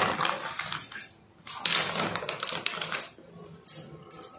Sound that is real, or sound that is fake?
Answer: real